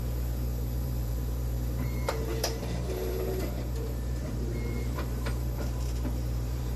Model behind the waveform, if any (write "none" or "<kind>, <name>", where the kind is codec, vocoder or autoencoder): vocoder, BigVGAN v2